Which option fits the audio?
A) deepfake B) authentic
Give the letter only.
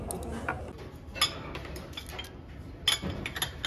B